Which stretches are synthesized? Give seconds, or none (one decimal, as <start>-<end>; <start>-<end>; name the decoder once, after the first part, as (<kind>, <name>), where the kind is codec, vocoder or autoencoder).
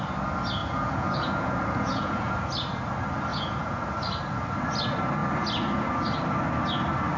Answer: 0.6-2.5 (vocoder, Vocos); 3.3-3.8